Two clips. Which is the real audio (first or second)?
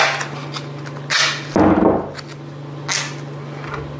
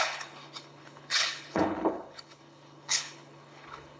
first